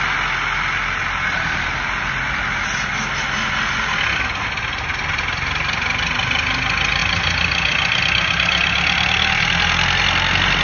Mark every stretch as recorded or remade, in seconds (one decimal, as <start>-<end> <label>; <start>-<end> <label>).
0.0-10.6 recorded